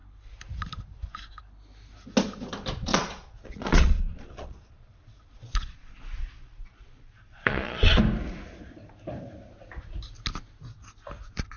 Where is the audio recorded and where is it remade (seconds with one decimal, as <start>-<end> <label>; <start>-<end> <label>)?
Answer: 0.0-2.9 recorded; 2.9-8.0 remade; 8.0-11.6 recorded